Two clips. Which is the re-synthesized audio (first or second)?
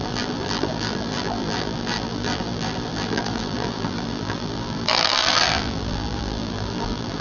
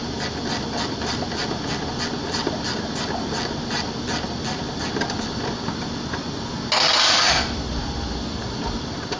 first